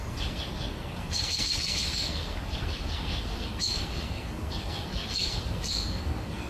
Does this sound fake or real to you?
fake